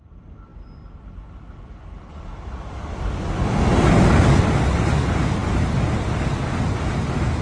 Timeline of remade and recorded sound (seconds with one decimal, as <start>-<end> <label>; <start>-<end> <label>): 0.0-7.4 recorded